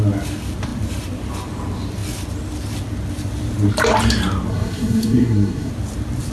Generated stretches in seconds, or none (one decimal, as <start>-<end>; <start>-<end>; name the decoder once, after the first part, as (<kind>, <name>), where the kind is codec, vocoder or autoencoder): 4.5-5.7 (codec, SNAC)

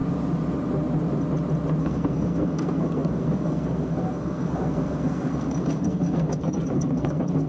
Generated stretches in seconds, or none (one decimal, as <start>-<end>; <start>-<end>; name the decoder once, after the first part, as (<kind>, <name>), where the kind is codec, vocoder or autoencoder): 1.8-7.5 (codec, SNAC)

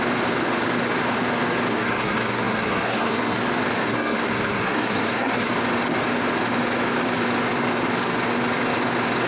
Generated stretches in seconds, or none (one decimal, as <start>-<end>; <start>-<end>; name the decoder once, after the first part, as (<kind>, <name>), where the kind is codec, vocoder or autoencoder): 1.7-3.4 (codec, SNAC); 3.8-5.5

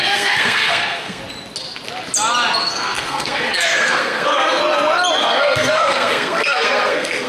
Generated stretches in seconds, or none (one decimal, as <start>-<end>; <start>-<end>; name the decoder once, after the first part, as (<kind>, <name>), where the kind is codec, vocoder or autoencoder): 0.0-1.2 (codec, SNAC); 2.6-4.6; 5.2-7.3

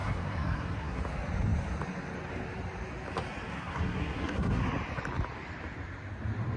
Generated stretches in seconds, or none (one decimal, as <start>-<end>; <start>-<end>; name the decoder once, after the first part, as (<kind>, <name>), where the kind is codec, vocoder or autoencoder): 0.0-1.0 (codec, SNAC); 3.5-4.6